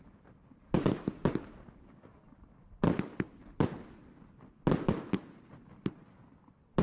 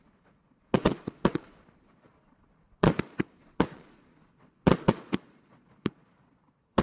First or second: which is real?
first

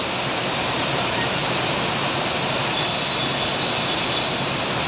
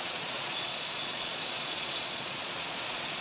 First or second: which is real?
first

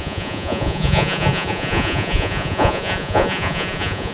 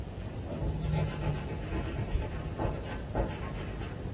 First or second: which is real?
second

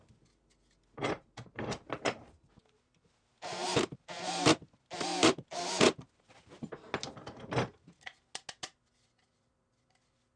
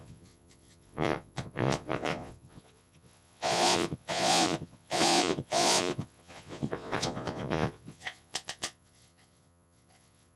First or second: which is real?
first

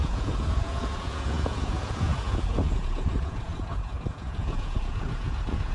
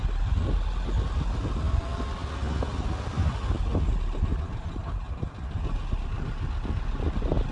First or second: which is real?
second